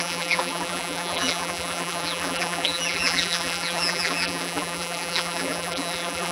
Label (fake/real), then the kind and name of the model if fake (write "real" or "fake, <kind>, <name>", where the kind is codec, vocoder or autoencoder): fake, vocoder, BigVGAN v2